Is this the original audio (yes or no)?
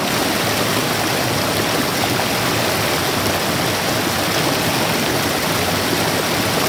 yes